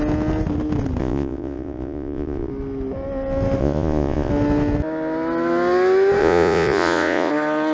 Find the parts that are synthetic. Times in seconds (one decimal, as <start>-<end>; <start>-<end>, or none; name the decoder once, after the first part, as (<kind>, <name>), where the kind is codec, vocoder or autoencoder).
1.0-2.5 (vocoder, Vocos); 3.6-4.3; 6.2-7.3